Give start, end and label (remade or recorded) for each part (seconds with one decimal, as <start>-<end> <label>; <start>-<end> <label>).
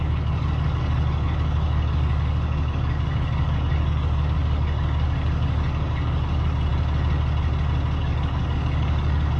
0.0-6.7 remade; 6.7-8.0 recorded; 8.0-9.4 remade